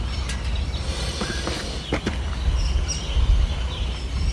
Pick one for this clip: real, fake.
real